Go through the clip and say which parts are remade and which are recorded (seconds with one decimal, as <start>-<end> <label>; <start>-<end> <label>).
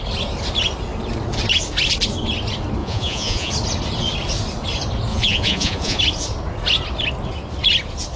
0.0-2.8 recorded; 2.8-3.5 remade; 3.5-5.1 recorded; 5.1-6.0 remade; 6.0-8.2 recorded